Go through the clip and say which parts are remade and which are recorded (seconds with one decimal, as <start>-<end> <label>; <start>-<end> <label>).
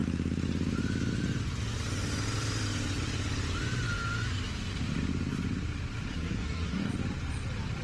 0.0-6.1 recorded; 6.1-6.9 remade; 6.9-7.8 recorded